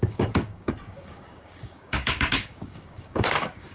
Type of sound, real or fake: fake